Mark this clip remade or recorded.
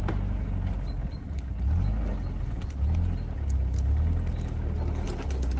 recorded